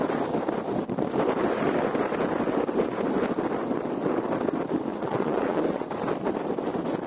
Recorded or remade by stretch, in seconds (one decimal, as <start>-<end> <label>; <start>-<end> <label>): 0.0-4.9 recorded; 4.9-5.9 remade; 5.9-7.1 recorded